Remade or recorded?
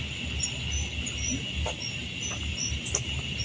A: recorded